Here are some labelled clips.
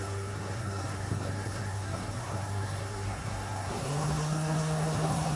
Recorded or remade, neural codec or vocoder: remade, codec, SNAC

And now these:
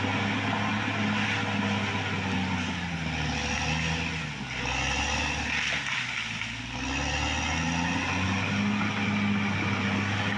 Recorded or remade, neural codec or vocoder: recorded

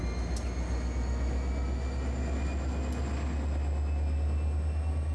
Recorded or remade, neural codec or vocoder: recorded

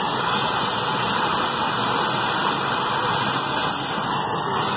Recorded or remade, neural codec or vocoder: recorded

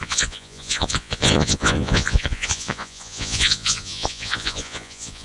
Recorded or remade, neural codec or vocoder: remade, vocoder, Vocos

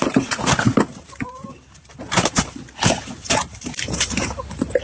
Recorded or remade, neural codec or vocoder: remade, vocoder, BigVGAN v2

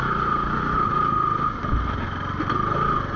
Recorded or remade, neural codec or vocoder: recorded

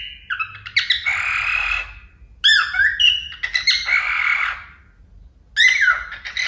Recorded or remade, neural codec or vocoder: recorded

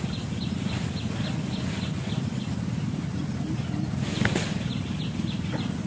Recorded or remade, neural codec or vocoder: recorded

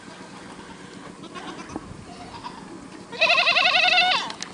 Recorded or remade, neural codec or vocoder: recorded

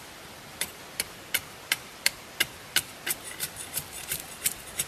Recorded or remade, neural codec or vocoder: remade, vocoder, BigVGAN v2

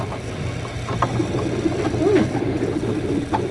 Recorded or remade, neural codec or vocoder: recorded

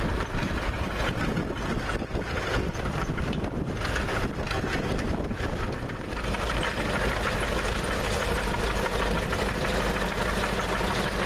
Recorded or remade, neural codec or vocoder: recorded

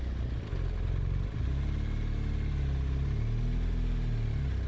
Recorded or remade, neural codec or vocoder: recorded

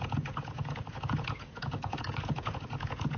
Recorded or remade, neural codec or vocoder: remade, vocoder, Vocos